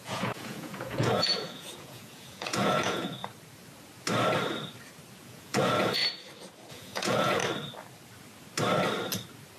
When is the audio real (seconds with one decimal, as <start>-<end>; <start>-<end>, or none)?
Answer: 3.2-5.2; 6.0-6.7; 7.4-9.6